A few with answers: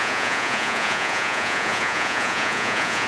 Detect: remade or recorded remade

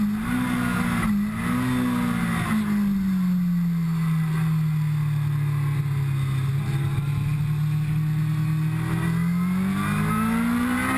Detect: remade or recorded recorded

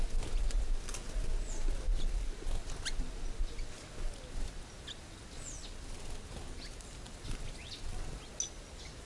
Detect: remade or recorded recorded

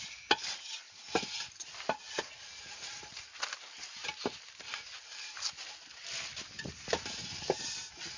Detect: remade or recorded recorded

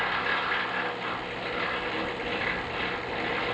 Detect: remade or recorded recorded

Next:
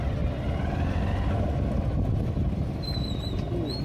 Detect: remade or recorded recorded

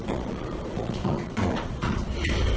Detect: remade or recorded remade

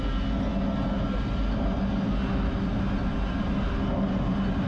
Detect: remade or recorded recorded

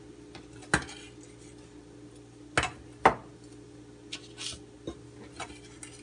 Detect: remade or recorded recorded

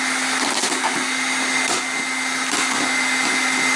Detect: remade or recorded recorded